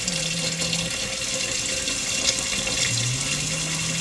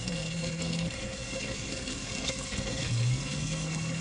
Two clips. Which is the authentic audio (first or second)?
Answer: first